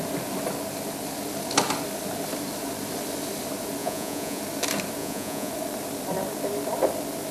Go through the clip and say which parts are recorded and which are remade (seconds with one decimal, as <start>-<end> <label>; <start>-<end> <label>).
0.0-3.8 recorded; 3.8-4.4 remade; 4.4-5.0 recorded; 5.0-5.5 remade; 5.5-7.3 recorded